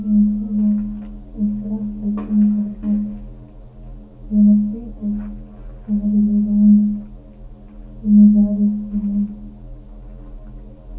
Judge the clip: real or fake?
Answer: real